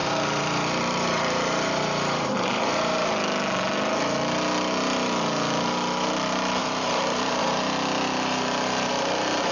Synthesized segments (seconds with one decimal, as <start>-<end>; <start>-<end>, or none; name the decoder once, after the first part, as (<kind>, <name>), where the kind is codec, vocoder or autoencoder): 0.0-3.1 (vocoder, BigVGAN v2); 6.6-7.4

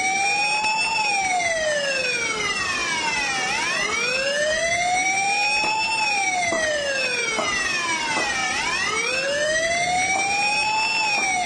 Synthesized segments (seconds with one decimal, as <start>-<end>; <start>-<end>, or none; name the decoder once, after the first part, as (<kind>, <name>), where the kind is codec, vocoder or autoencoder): 8.4-9.1 (vocoder, BigVGAN v2)

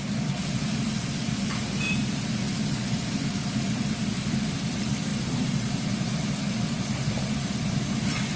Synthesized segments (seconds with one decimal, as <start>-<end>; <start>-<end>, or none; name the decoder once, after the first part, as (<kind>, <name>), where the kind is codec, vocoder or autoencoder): 0.0-8.4 (vocoder, BigVGAN v2)

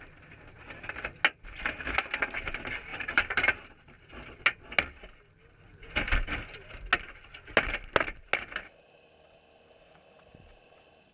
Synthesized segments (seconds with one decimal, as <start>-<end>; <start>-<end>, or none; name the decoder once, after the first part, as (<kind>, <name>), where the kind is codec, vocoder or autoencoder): 2.9-4.0 (vocoder, BigVGAN v2)

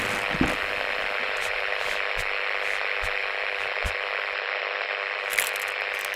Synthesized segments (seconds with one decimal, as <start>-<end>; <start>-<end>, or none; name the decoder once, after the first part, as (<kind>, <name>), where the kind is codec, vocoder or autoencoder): 1.2-1.7 (vocoder, BigVGAN v2)

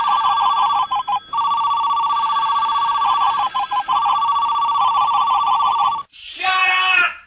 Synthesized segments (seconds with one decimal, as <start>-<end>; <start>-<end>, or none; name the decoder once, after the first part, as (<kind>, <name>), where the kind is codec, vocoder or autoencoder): 0.0-6.6 (vocoder, BigVGAN v2)

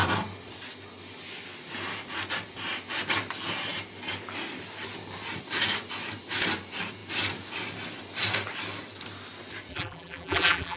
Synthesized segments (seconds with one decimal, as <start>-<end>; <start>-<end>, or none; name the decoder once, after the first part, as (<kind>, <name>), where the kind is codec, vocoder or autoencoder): 9.7-10.8 (vocoder, BigVGAN v2)

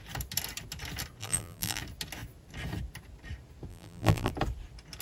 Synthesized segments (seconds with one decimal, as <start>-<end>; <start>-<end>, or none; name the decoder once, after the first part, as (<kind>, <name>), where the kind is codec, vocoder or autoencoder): 1.2-1.8 (vocoder, BigVGAN v2); 3.7-4.3